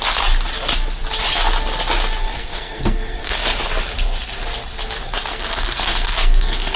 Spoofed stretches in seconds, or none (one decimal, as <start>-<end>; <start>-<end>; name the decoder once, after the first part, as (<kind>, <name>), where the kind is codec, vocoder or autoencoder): 2.3-3.3 (codec, SNAC); 5.3-6.8